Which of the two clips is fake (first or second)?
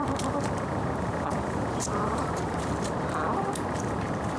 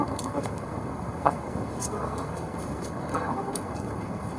second